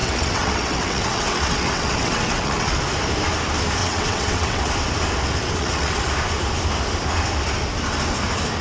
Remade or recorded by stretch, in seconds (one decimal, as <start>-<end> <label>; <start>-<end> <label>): 0.0-2.8 remade; 2.8-3.8 recorded; 3.8-4.7 remade; 4.7-5.4 recorded; 5.4-6.1 remade; 6.1-8.6 recorded